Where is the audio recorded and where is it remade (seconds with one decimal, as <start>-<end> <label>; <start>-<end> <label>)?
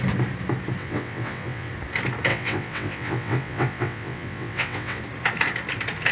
0.0-0.8 recorded; 0.8-1.7 remade; 1.7-2.3 recorded; 2.3-5.0 remade; 5.0-6.1 recorded